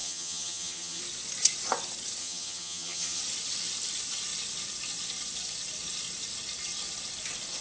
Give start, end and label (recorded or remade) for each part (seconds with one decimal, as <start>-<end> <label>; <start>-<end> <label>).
0.0-1.0 remade; 1.0-2.2 recorded; 2.2-3.2 remade; 3.2-7.6 recorded